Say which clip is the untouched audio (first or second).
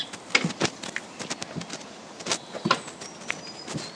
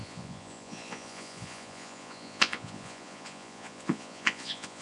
first